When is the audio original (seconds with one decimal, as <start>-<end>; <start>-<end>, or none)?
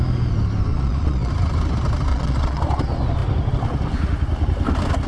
0.0-0.7; 1.3-2.1; 2.6-5.1